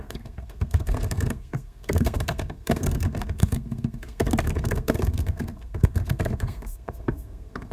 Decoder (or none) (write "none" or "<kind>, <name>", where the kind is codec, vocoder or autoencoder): codec, SNAC